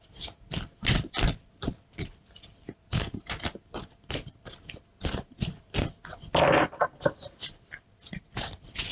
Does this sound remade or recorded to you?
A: recorded